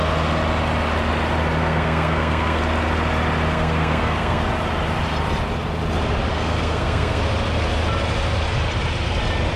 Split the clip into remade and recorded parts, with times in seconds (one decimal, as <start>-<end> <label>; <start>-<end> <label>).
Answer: 0.0-1.6 recorded; 1.6-2.6 remade; 2.6-3.5 recorded; 3.5-4.4 remade; 4.4-6.3 recorded; 6.3-7.2 remade; 7.2-9.6 recorded